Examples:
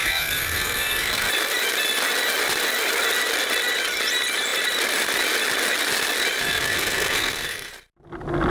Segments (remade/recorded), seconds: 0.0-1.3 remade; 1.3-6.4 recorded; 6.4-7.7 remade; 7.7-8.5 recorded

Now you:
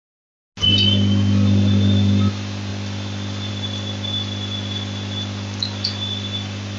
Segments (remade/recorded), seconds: 0.0-6.8 recorded

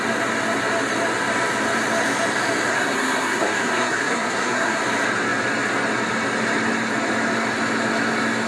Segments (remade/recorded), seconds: 0.0-2.7 recorded; 2.7-4.8 remade; 4.8-8.5 recorded

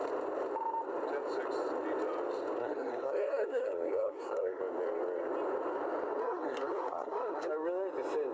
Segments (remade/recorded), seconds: 0.0-2.6 recorded; 2.6-4.6 remade; 4.6-6.2 recorded; 6.2-7.5 remade; 7.5-8.3 recorded

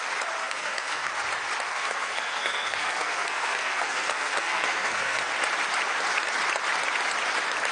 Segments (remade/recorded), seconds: 0.0-0.4 recorded; 0.4-1.1 remade; 1.1-1.7 recorded; 1.7-5.3 remade; 5.3-7.7 recorded

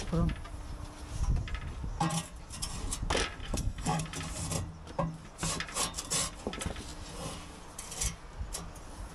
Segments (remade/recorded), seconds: 0.0-3.4 recorded; 3.4-4.0 remade; 4.0-9.1 recorded

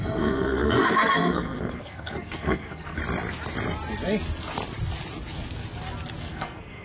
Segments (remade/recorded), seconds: 0.0-3.0 remade; 3.0-6.2 recorded; 6.2-6.8 remade

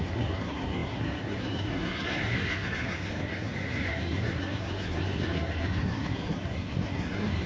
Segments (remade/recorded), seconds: 0.0-7.5 remade